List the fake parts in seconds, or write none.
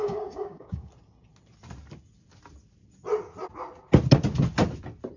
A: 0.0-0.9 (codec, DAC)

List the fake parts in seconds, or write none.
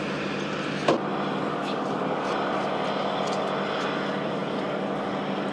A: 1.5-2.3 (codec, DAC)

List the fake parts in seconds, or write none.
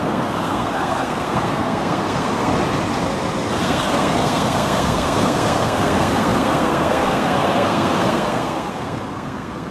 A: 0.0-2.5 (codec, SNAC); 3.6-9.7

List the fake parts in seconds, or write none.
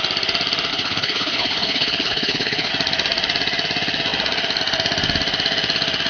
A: 0.7-2.7 (codec, HILCodec)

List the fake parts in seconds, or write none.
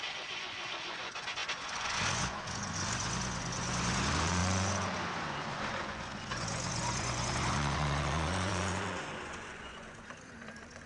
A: 0.0-10.9 (vocoder, Vocos)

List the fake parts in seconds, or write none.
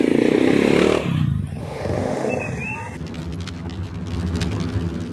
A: 1.6-2.3 (autoencoder, DAC-VAE)